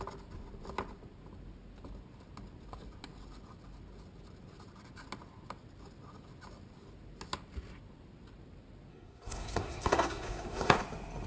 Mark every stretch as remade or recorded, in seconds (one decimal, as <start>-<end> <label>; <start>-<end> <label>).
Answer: 0.0-8.9 recorded; 8.9-10.8 remade; 10.8-11.3 recorded